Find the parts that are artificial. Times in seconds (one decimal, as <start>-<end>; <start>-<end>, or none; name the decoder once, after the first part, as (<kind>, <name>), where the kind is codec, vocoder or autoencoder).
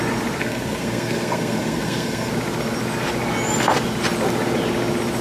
0.4-2.3 (codec, SNAC)